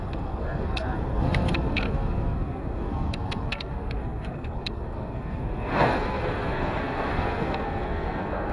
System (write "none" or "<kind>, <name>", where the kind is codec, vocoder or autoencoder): codec, SNAC